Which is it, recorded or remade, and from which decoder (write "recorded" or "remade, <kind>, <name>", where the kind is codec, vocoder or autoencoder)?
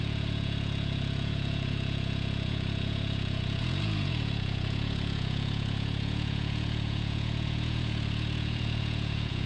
remade, vocoder, Vocos